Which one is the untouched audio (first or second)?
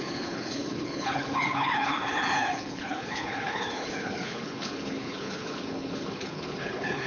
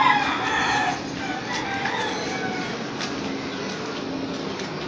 second